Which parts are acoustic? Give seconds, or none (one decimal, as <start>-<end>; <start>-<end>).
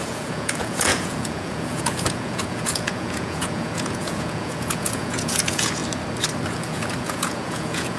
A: 5.8-6.5